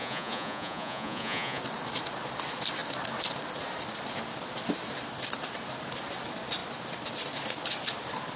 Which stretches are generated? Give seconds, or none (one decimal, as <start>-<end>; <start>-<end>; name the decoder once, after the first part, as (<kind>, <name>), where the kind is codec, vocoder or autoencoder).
0.0-1.6 (vocoder, Vocos)